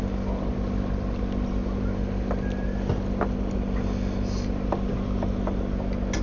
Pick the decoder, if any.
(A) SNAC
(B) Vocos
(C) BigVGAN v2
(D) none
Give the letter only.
D